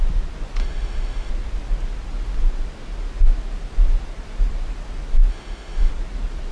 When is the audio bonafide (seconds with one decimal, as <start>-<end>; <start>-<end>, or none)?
0.0-0.6; 1.3-5.3; 5.9-6.5